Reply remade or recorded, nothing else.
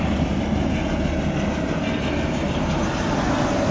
recorded